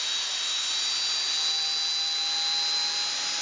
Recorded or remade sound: recorded